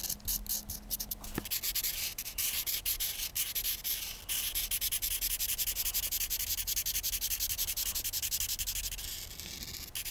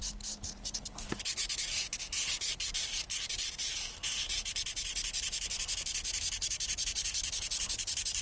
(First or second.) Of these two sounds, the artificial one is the second